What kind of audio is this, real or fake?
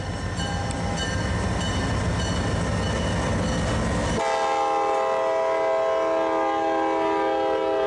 real